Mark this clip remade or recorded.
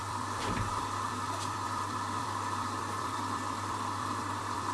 remade